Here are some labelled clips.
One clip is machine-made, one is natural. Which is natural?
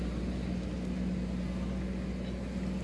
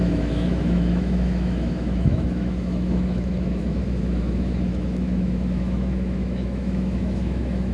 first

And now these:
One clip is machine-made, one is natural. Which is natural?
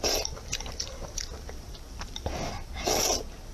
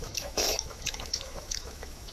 first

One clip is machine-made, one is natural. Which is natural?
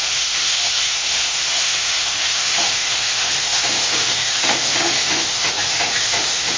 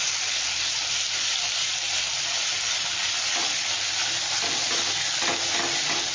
second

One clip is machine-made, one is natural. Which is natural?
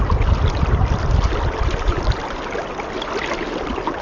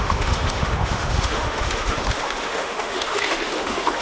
first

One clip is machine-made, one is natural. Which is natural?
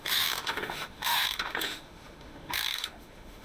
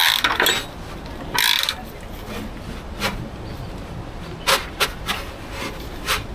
second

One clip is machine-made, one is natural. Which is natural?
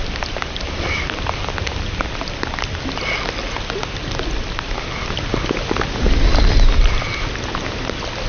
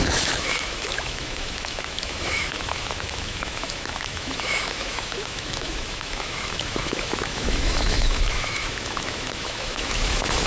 first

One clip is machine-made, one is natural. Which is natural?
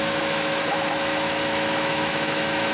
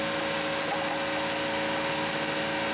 second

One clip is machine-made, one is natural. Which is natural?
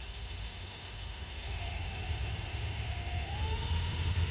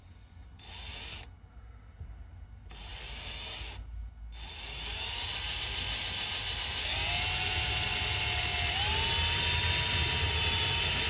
second